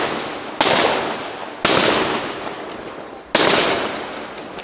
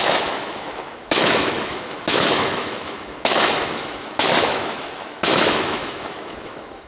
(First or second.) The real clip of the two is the first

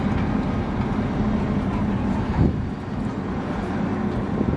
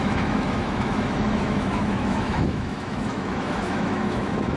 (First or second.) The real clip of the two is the first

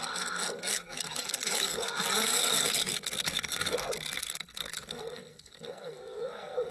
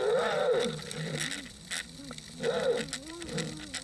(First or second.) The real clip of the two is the second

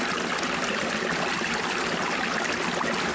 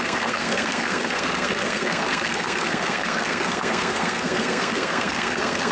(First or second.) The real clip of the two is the first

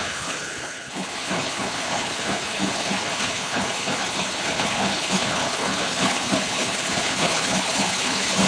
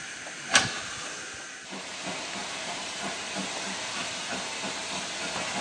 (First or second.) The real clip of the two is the second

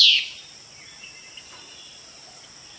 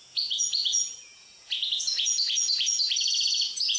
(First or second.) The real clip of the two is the first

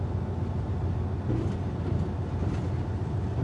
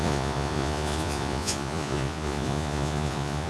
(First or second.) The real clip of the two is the first